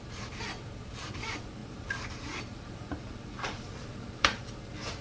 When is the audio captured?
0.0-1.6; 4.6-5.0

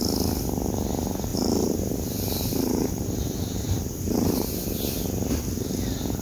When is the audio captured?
0.0-1.3; 4.6-6.2

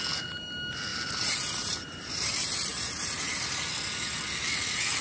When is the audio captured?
0.0-0.9; 2.3-2.7; 3.4-5.0

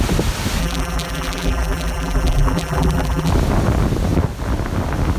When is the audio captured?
0.0-0.6; 3.3-5.2

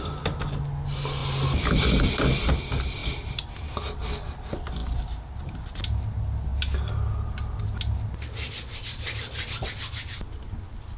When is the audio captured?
0.0-3.0; 3.5-11.0

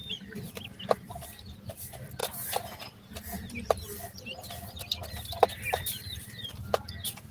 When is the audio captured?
0.0-7.3

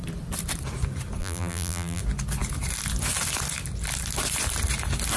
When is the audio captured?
0.0-1.2; 2.0-5.2